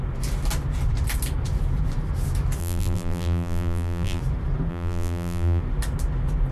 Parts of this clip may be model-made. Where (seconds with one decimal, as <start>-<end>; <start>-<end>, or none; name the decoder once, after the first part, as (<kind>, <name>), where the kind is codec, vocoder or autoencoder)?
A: 2.6-4.2 (vocoder, BigVGAN v2); 4.7-5.6